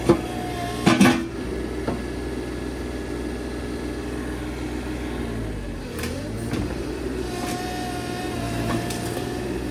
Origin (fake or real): real